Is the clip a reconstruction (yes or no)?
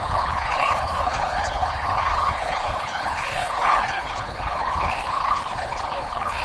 yes